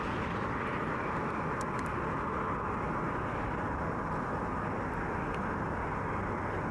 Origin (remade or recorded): recorded